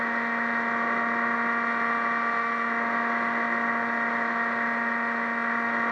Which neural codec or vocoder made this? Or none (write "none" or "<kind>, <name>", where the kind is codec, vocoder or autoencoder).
none